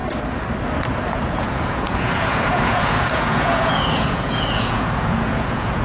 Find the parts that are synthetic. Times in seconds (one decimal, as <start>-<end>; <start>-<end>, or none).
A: 0.9-5.8